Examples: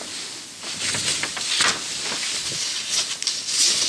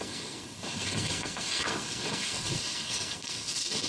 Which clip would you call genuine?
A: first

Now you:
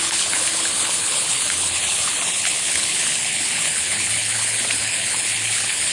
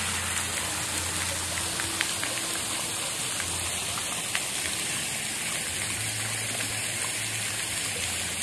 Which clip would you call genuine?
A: second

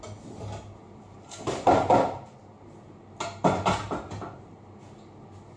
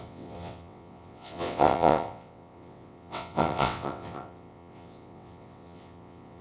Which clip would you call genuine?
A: first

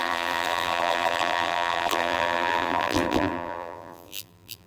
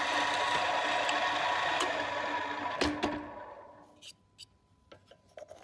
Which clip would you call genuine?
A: second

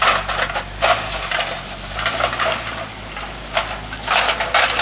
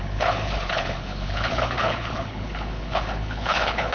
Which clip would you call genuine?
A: first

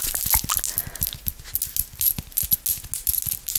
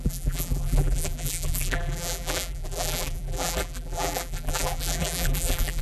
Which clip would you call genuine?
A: first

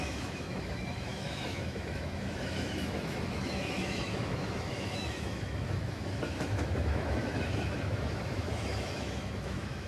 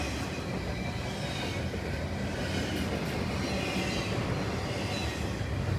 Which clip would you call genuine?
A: second